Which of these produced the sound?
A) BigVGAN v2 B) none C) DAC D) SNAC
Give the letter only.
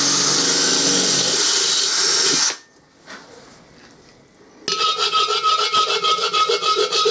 B